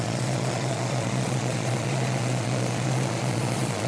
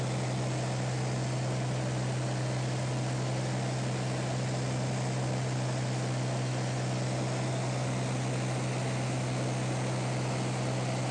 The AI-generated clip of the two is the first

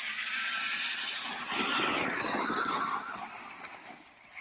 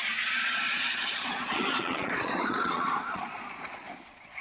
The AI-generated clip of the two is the second